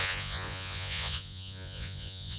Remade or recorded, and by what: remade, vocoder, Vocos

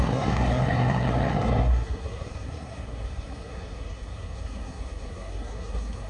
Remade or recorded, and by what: remade, codec, SNAC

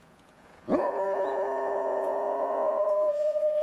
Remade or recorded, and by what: remade, vocoder, Vocos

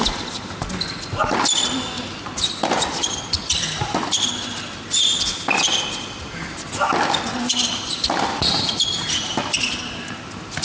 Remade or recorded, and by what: recorded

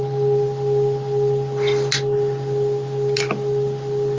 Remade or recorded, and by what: recorded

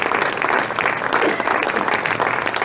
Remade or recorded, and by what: recorded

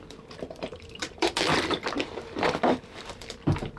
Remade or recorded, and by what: remade, vocoder, BigVGAN v2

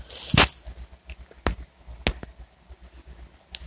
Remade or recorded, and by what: recorded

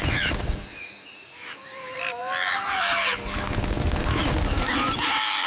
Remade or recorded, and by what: recorded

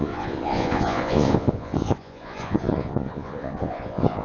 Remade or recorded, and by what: remade, vocoder, Vocos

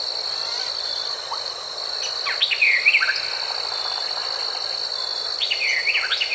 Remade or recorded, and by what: recorded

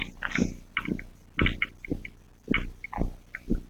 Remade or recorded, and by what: recorded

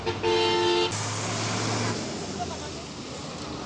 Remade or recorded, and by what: recorded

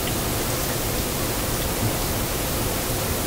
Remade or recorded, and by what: recorded